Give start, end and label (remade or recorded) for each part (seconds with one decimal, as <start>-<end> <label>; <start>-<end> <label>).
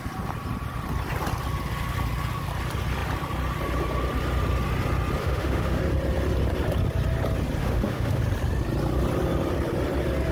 0.0-5.2 recorded; 5.2-5.8 remade; 5.8-7.6 recorded; 7.6-8.2 remade; 8.2-10.3 recorded